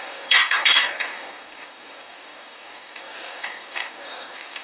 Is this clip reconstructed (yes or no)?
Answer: yes